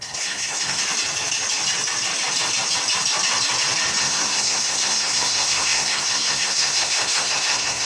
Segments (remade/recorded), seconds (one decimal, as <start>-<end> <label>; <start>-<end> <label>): 0.0-0.8 remade; 0.8-4.0 recorded; 4.0-7.8 remade